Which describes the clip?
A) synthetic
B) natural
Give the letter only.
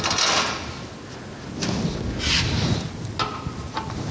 B